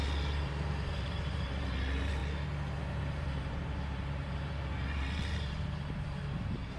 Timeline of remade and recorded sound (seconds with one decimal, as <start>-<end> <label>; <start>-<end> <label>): 0.0-2.2 remade; 2.2-2.8 recorded; 2.8-6.8 remade